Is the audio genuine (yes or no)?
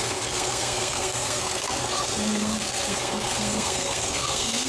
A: no